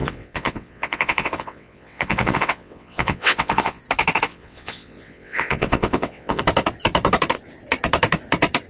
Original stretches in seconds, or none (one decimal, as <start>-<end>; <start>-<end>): 3.8-4.3; 6.4-8.7